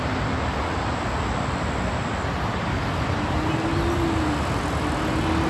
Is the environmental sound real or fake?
real